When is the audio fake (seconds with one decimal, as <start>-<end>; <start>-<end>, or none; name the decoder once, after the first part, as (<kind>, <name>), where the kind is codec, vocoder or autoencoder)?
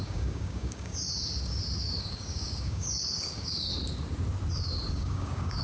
0.0-0.9 (codec, DAC); 2.0-3.7; 4.9-5.6